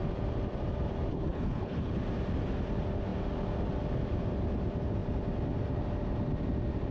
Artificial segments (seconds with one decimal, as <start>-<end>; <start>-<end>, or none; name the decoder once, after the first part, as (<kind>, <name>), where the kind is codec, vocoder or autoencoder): 1.1-1.9 (codec, HILCodec)